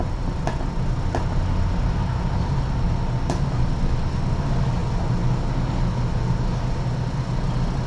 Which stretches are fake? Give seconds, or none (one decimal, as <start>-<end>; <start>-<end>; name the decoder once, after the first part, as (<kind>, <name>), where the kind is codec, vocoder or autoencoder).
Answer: none